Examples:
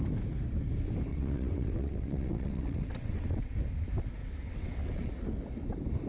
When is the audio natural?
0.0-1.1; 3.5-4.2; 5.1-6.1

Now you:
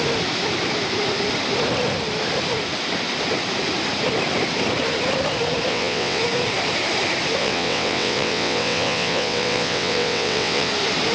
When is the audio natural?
0.0-5.7; 6.2-7.4; 10.7-11.1